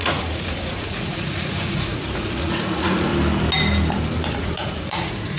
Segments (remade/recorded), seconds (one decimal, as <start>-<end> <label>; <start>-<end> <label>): 0.0-3.1 remade; 3.1-4.3 recorded; 4.3-5.4 remade